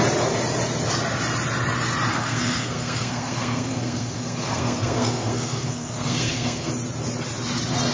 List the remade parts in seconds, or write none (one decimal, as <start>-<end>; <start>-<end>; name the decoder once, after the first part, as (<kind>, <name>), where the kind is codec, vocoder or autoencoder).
2.1-6.7 (codec, SNAC)